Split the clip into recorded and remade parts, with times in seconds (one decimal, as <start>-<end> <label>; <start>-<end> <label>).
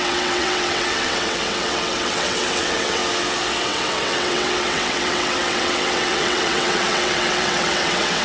0.0-3.0 remade; 3.0-3.6 recorded; 3.6-8.2 remade